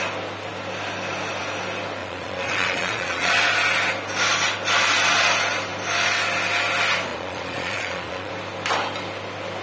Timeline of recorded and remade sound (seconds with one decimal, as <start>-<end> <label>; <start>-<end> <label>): 0.0-2.0 recorded; 2.0-3.3 remade; 3.3-7.1 recorded; 7.1-8.3 remade; 8.3-9.6 recorded